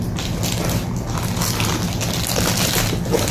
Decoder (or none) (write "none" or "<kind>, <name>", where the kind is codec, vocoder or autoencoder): none